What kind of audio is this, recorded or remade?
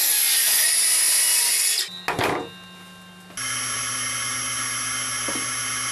recorded